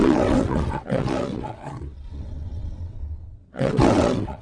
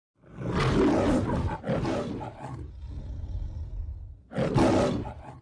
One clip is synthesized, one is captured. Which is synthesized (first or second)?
first